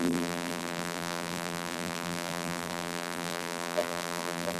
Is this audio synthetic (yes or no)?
yes